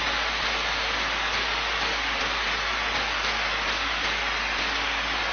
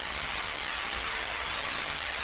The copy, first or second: second